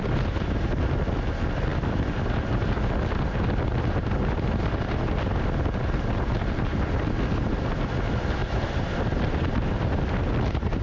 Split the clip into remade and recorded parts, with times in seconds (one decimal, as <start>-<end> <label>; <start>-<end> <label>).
0.0-8.4 recorded; 8.4-10.0 remade; 10.0-10.8 recorded